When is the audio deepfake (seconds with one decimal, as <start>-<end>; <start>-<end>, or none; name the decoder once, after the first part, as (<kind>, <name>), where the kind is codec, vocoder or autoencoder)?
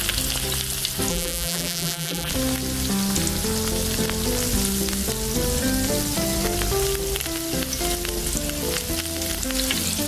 1.1-2.3 (vocoder, BigVGAN v2)